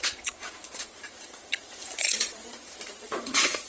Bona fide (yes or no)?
no